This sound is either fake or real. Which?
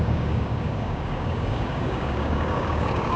fake